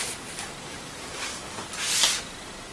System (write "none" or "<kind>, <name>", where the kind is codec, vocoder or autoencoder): none